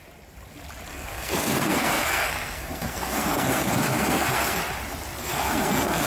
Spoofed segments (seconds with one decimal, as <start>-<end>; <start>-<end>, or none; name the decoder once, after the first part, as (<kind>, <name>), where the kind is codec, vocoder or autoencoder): 0.9-4.6 (codec, SNAC); 5.2-6.1